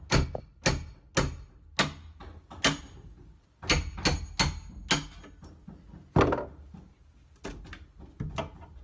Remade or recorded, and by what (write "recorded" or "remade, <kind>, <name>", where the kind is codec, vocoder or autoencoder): recorded